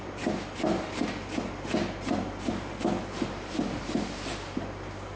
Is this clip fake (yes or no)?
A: no